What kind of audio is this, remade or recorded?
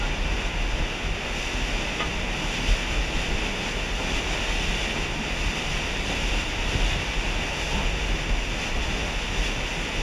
recorded